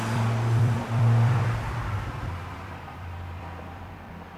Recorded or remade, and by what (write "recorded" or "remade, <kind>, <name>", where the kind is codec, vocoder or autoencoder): remade, vocoder, BigVGAN v2